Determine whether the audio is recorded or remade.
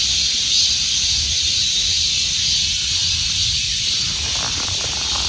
recorded